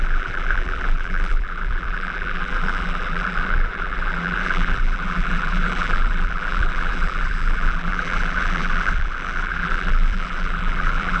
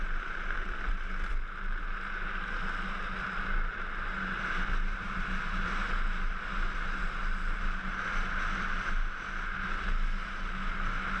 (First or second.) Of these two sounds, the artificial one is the first